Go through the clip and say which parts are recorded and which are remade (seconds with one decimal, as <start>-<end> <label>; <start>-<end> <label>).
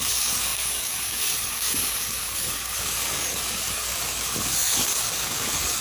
0.0-5.8 remade